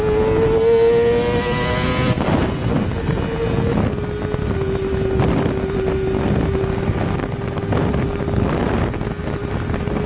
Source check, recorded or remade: recorded